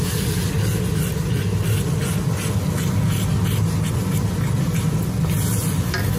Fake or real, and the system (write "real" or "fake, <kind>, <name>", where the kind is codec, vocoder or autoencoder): real